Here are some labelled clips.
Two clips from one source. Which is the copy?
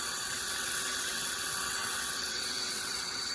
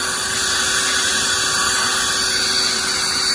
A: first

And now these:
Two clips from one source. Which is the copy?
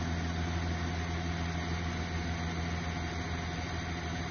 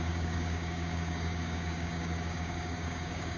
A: second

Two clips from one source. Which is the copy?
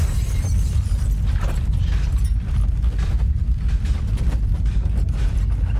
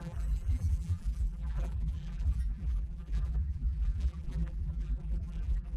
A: second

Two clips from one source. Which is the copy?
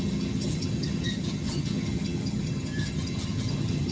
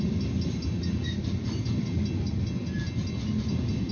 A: first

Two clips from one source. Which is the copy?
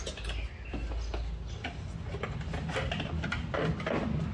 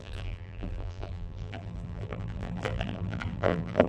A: second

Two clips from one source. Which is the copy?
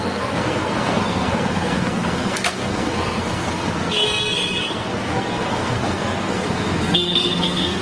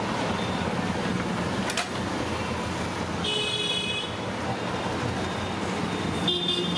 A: first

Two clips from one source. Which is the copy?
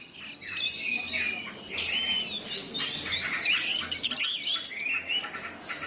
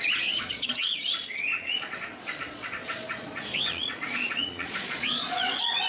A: second